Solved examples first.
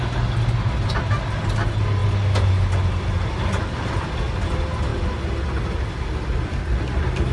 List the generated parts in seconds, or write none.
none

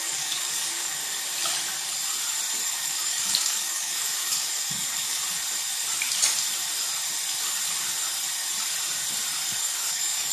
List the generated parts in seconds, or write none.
0.0-1.0 (codec, DAC); 2.7-5.2; 9.6-10.3

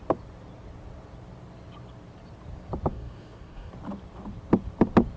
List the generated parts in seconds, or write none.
2.9-3.7 (codec, DAC)

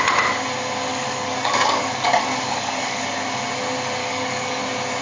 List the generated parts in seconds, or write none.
0.9-3.1 (codec, DAC); 4.0-4.6

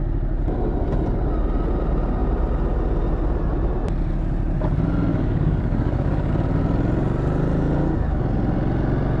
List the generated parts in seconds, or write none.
5.1-6.3 (codec, DAC)

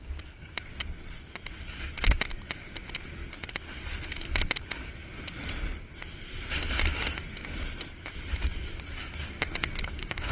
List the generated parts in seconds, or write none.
9.2-10.3 (codec, DAC)